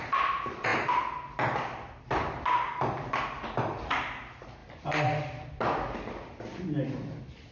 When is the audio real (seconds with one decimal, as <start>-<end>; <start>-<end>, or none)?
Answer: 0.0-7.5